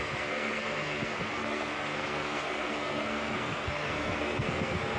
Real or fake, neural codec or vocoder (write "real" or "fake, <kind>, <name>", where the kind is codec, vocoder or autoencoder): fake, codec, SNAC